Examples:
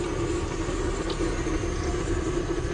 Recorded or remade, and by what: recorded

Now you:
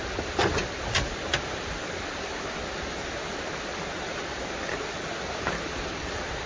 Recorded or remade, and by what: recorded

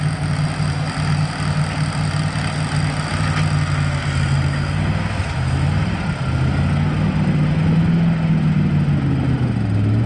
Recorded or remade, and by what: recorded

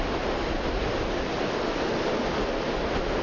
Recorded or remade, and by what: recorded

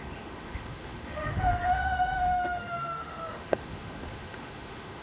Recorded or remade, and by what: remade, autoencoder, DAC-VAE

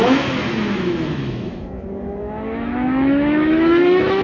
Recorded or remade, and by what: remade, autoencoder, DAC-VAE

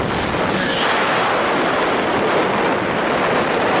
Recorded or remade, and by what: recorded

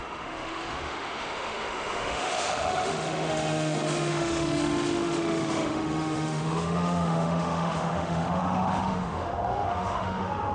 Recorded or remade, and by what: remade, autoencoder, DAC-VAE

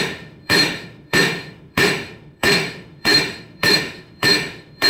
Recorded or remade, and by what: remade, autoencoder, DAC-VAE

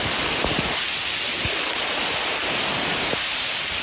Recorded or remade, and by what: recorded